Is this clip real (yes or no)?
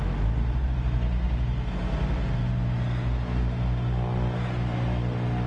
yes